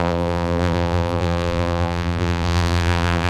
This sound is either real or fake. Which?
fake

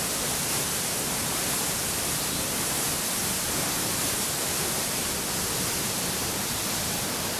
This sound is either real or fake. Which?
fake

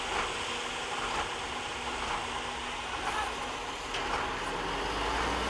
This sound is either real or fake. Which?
real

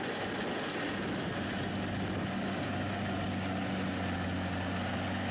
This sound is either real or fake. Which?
real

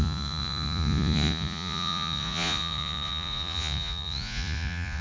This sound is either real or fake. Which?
fake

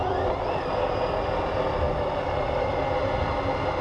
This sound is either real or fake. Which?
real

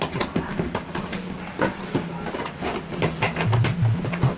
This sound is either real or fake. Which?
real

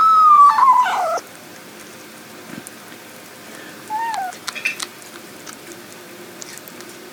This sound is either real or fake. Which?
fake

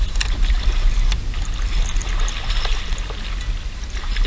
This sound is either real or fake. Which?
real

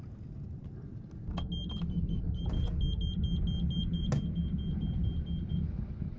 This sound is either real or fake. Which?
real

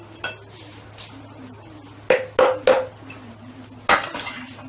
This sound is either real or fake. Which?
real